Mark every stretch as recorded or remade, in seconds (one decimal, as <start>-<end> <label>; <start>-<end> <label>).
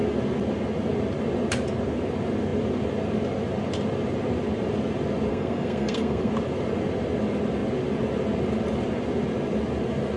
0.0-5.3 recorded; 5.3-6.3 remade; 6.3-10.2 recorded